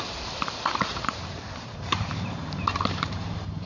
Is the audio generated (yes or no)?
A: yes